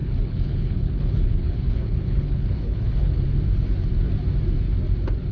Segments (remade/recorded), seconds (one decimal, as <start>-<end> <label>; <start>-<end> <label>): 0.0-3.2 remade; 3.2-5.3 recorded